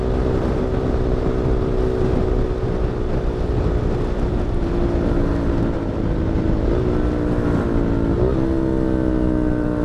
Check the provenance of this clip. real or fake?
real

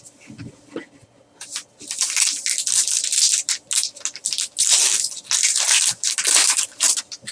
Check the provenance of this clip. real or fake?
real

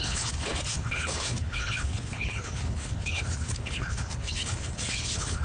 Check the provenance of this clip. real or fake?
fake